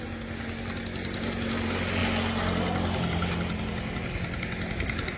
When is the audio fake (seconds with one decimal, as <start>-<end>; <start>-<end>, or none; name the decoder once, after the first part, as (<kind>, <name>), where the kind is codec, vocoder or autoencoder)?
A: none